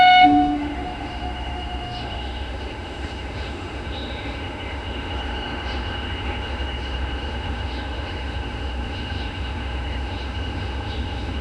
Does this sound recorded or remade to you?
remade